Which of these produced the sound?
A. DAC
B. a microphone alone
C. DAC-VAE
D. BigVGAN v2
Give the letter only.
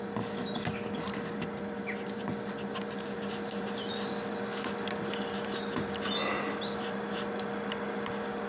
B